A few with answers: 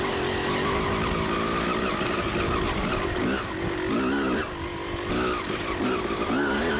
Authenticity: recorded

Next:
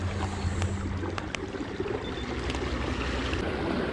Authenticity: recorded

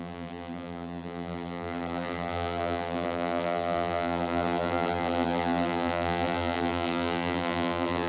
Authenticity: remade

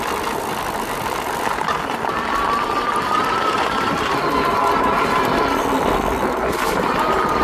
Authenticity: remade